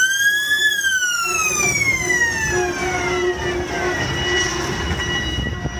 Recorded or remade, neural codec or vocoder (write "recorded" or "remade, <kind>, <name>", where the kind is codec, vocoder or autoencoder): recorded